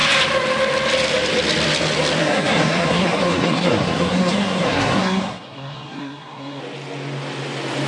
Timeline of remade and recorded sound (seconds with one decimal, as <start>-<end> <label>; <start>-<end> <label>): 0.0-2.2 recorded; 2.2-6.6 remade; 6.6-7.9 recorded